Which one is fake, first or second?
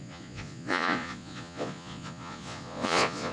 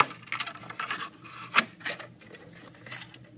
first